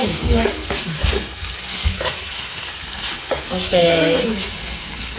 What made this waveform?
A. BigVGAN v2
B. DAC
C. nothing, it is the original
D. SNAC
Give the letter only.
D